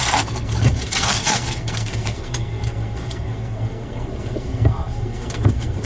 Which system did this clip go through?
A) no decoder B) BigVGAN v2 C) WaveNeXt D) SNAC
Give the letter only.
D